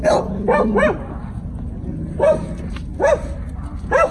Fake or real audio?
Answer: real